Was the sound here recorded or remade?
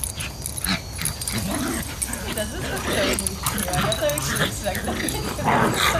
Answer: recorded